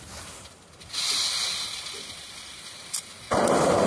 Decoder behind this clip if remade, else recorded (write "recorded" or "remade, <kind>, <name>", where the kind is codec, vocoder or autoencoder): recorded